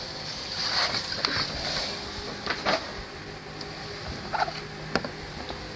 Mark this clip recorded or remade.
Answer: recorded